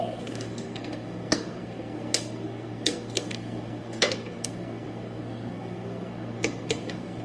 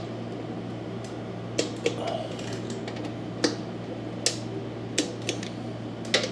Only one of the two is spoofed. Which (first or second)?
first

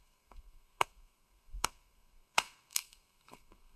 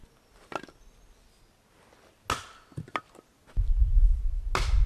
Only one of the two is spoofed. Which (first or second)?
first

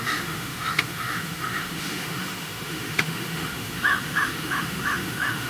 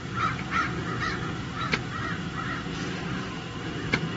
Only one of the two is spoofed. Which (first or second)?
first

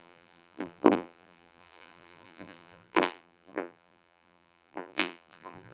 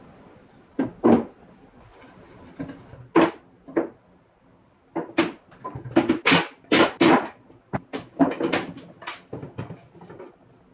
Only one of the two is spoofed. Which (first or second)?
first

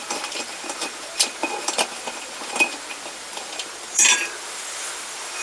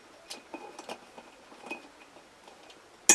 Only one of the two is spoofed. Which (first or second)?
first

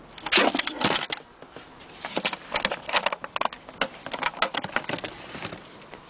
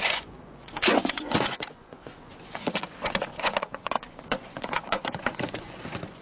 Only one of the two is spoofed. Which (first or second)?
second